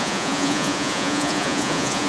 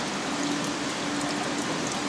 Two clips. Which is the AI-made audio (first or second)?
first